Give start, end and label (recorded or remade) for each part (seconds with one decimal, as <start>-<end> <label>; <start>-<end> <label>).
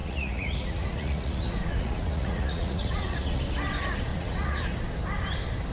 0.0-3.4 remade; 3.4-4.1 recorded; 4.1-4.6 remade; 4.6-5.7 recorded